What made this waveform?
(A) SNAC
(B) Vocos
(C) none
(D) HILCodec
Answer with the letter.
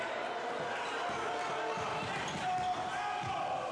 C